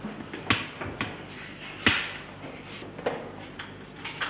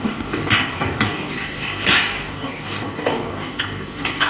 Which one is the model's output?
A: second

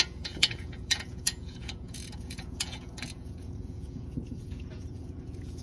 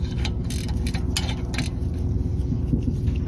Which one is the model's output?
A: first